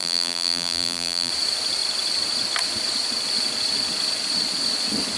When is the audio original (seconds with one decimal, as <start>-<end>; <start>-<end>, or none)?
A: 1.3-5.2